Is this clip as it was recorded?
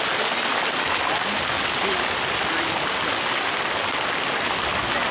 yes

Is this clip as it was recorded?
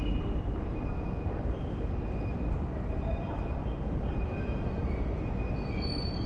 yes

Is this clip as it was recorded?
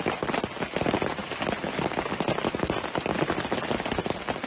yes